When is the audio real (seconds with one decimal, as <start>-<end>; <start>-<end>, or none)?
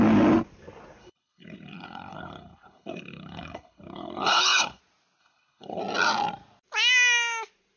0.0-1.0; 4.8-5.2; 5.8-7.8